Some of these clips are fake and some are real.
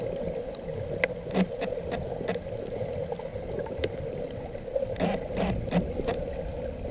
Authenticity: real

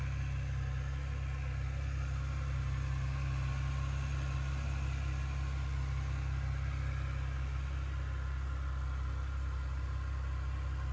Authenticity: real